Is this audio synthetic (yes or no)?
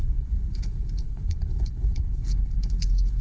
yes